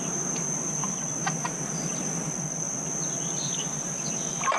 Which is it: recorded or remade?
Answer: recorded